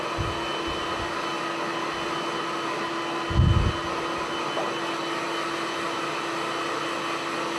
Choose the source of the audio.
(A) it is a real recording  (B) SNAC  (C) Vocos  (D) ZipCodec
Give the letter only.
A